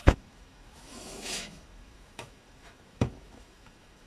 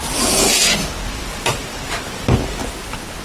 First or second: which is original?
second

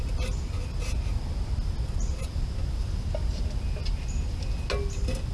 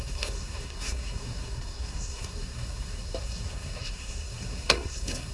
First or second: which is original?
first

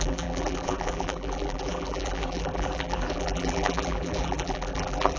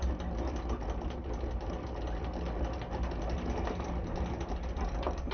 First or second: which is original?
second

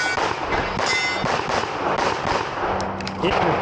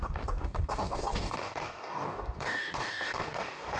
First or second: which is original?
first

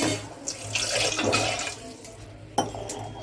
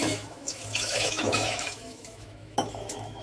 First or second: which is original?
first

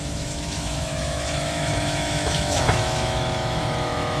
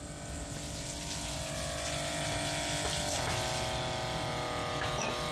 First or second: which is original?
second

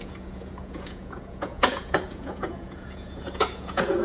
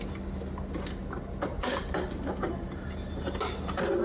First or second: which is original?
second